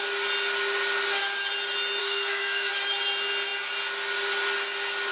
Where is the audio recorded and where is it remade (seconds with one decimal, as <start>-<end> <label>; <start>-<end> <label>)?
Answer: 0.0-2.0 recorded; 2.0-2.7 remade; 2.7-5.1 recorded